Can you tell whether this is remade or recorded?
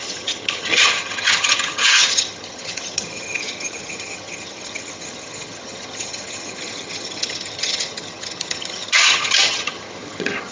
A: remade